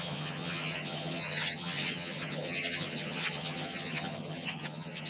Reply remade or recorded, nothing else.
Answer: remade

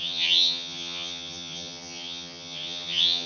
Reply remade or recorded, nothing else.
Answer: remade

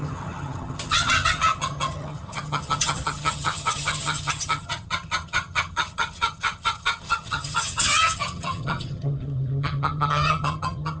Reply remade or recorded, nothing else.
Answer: remade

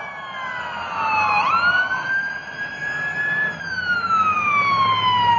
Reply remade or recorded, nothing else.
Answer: recorded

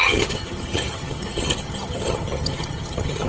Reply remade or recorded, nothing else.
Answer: remade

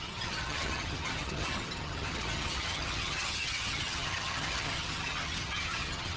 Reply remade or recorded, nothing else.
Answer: remade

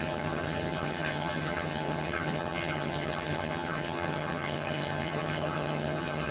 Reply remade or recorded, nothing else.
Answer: remade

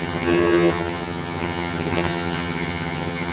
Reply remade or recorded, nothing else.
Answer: remade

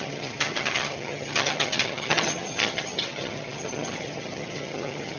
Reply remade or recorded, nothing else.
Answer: remade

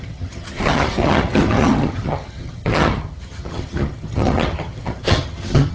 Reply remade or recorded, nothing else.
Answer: remade